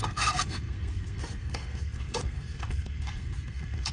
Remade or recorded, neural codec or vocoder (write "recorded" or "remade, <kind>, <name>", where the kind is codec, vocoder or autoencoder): remade, codec, SNAC